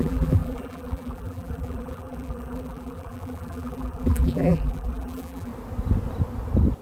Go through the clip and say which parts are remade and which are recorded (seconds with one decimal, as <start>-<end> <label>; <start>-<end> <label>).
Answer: 0.0-5.5 remade; 5.5-6.8 recorded